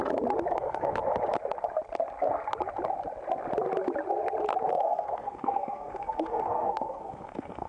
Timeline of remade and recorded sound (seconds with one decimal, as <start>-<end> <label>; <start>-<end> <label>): 0.0-0.5 recorded; 0.5-1.0 remade; 1.0-4.7 recorded; 4.7-7.7 remade